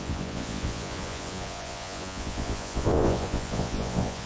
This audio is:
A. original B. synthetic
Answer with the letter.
B